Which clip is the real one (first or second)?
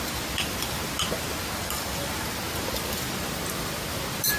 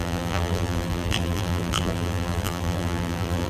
first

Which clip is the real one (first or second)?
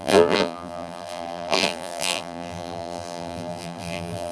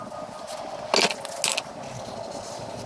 second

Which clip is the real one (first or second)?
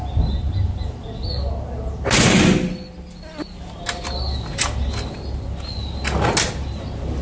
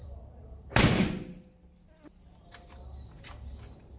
first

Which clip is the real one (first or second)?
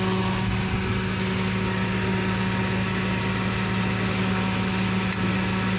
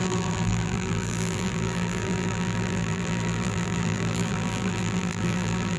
first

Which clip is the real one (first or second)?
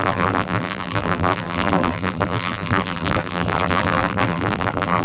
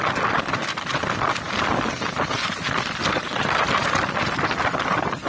second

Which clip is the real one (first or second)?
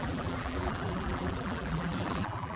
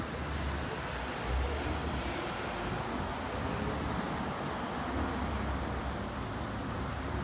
second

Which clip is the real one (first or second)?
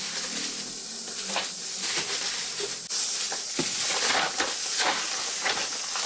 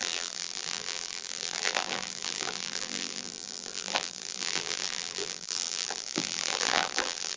first